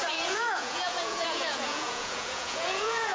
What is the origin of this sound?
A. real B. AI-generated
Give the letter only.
B